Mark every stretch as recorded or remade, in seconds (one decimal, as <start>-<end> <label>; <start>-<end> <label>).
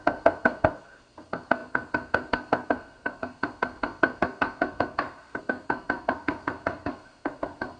0.0-7.8 remade